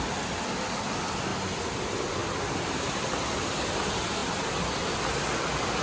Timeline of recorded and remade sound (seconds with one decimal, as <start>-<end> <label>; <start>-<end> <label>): 0.0-2.2 recorded; 2.2-3.0 remade; 3.0-5.8 recorded